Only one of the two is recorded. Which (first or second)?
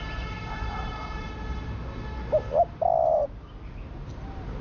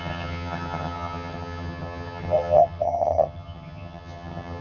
first